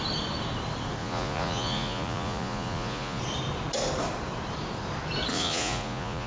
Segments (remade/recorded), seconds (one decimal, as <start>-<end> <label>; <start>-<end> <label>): 0.0-1.0 recorded; 1.0-3.2 remade; 3.2-5.3 recorded; 5.3-6.3 remade